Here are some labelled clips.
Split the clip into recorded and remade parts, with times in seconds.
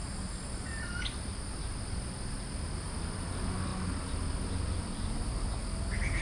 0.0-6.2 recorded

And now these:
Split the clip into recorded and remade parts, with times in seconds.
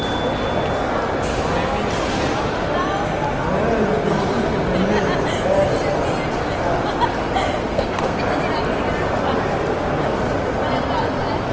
0.0-7.6 recorded; 7.6-8.2 remade; 8.2-11.5 recorded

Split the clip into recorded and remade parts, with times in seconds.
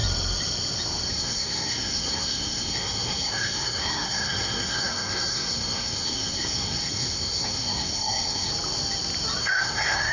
0.0-1.1 recorded; 1.1-8.5 remade; 8.5-9.4 recorded; 9.4-10.1 remade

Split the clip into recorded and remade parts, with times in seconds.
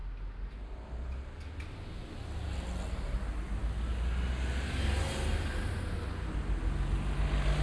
0.0-7.6 recorded